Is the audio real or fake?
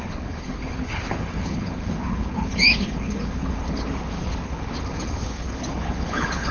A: fake